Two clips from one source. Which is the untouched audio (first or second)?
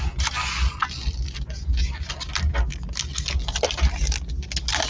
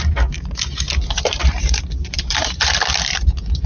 first